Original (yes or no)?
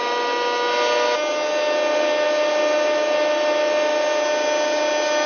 yes